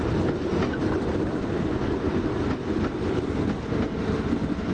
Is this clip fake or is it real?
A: real